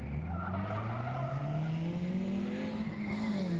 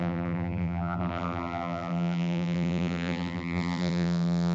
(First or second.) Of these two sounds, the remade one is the second